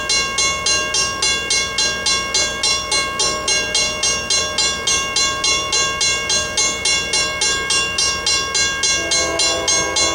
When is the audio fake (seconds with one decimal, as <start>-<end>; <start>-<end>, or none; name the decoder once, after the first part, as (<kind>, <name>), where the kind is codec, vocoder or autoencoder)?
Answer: none